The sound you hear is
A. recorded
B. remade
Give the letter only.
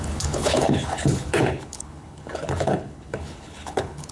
B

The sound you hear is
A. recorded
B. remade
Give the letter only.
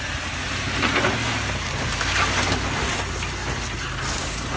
A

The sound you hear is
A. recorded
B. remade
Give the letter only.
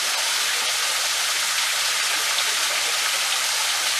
A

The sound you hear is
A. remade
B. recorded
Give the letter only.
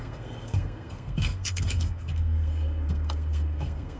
A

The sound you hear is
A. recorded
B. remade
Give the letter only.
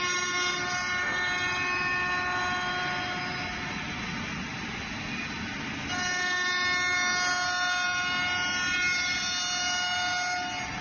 A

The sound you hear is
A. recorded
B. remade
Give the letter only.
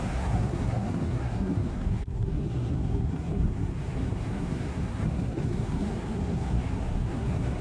B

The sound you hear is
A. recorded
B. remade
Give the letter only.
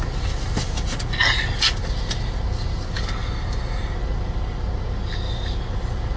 A